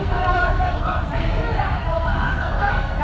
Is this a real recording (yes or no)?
no